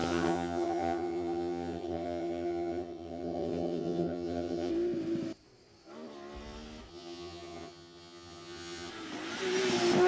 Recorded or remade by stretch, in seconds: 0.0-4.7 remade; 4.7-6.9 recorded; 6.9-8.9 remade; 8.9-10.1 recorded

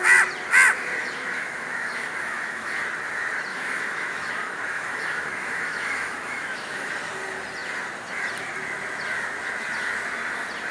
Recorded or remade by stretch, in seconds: 0.0-1.0 recorded; 1.0-2.8 remade; 2.8-3.5 recorded; 3.5-6.9 remade; 6.9-10.7 recorded

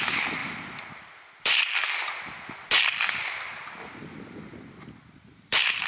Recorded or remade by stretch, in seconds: 0.0-0.4 recorded; 0.4-2.1 remade; 2.1-5.0 recorded; 5.0-5.9 remade

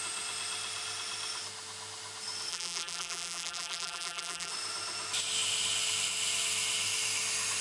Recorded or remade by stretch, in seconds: 0.0-2.5 recorded; 2.5-4.5 remade; 4.5-7.6 recorded

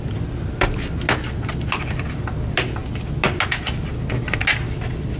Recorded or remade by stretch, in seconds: 0.0-5.2 recorded

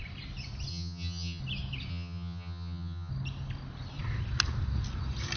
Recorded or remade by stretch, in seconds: 0.0-0.7 recorded; 0.7-1.4 remade; 1.4-1.9 recorded; 1.9-3.1 remade; 3.1-5.4 recorded

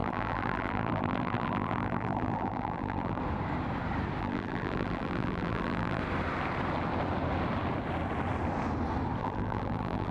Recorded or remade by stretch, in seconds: 0.0-3.2 remade; 3.2-4.2 recorded; 4.2-6.0 remade; 6.0-9.2 recorded; 9.2-10.1 remade

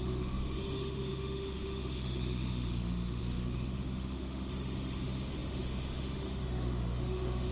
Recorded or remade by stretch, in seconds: 0.0-7.5 remade